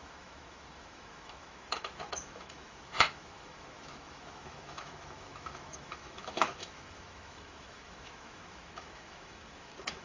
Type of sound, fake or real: fake